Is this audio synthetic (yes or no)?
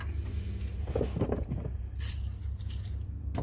no